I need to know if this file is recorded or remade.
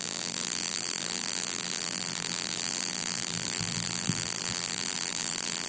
remade